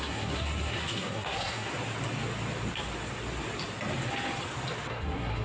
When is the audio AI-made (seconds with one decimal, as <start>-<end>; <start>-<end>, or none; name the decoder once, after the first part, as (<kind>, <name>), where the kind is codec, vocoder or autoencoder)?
0.0-1.7 (codec, SNAC); 4.9-5.4